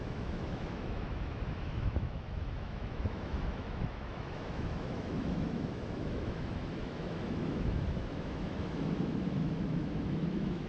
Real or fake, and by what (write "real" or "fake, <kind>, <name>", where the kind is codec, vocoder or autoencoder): fake, autoencoder, DAC-VAE